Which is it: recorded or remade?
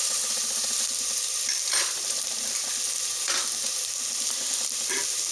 recorded